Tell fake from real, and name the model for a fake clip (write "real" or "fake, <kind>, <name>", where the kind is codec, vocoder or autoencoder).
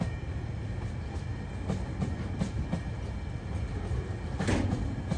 real